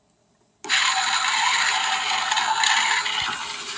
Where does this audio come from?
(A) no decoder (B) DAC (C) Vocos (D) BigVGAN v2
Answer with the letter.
A